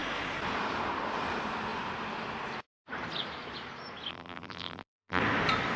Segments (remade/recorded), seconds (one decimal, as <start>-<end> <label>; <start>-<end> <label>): 0.0-4.1 recorded; 4.1-5.2 remade; 5.2-5.8 recorded